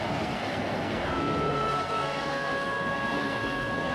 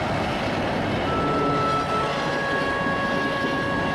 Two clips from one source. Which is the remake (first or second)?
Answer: first